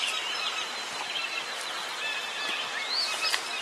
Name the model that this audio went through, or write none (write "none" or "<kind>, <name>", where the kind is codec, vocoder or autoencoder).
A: none